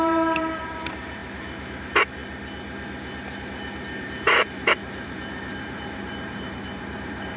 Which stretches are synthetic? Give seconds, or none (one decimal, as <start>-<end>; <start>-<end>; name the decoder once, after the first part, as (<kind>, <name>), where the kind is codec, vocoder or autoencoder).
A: 0.0-2.2 (vocoder, BigVGAN v2); 4.0-7.4

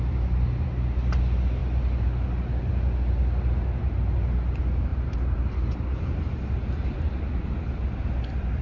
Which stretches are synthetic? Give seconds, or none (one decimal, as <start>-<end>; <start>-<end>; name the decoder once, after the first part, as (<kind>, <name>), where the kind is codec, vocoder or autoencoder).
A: 4.9-6.5 (vocoder, BigVGAN v2)

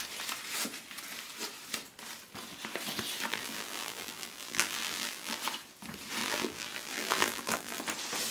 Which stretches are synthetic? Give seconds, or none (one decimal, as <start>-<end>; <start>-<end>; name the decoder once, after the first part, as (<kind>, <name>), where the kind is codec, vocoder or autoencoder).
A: 3.3-5.4 (vocoder, BigVGAN v2); 6.2-7.8